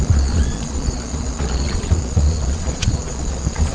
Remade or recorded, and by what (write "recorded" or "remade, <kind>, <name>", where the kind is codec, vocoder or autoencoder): remade, vocoder, Vocos